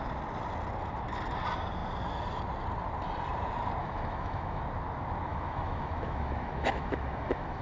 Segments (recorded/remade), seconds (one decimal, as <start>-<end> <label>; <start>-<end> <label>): 0.0-3.8 recorded; 3.8-4.6 remade; 4.6-5.3 recorded; 5.3-7.6 remade